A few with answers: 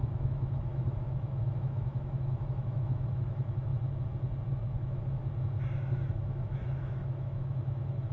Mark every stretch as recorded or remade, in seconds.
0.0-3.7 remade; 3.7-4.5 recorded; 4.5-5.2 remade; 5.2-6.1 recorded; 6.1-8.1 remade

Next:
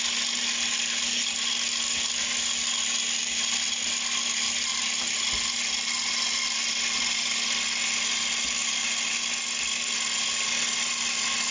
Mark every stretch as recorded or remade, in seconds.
0.0-11.5 recorded

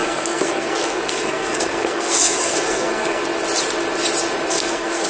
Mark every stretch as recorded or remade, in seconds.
0.0-3.2 remade; 3.2-4.5 recorded; 4.5-5.1 remade